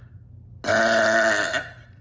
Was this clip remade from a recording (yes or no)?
no